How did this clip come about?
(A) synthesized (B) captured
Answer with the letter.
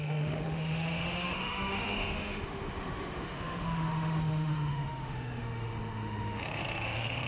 A